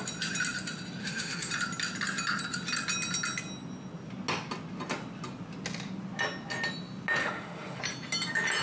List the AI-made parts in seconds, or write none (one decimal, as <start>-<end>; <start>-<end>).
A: 1.0-1.5; 7.2-7.8